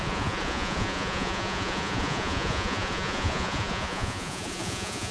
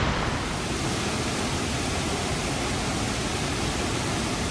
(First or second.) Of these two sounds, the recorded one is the second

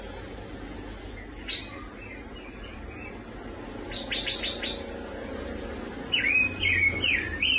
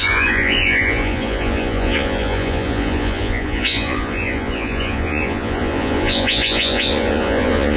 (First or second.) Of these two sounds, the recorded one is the first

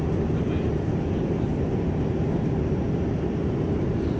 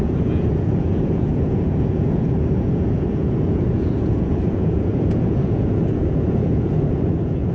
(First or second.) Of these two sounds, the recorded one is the first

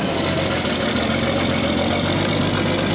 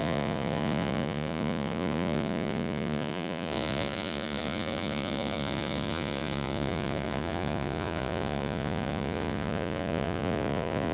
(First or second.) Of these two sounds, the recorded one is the first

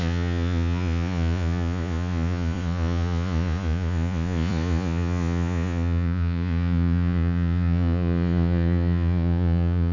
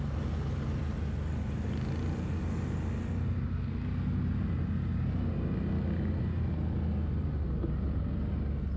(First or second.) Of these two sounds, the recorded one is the second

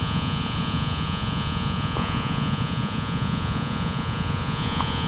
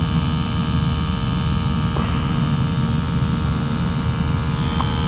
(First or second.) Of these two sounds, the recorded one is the second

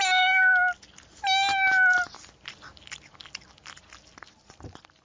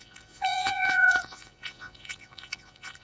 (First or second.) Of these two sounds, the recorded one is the first